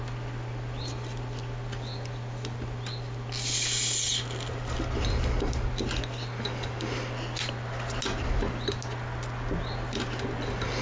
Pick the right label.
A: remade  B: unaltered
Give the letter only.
B